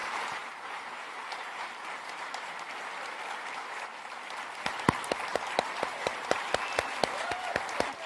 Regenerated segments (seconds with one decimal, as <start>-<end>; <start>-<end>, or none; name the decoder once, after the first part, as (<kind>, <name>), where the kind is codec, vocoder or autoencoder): 0.0-2.6 (vocoder, BigVGAN v2); 5.3-6.4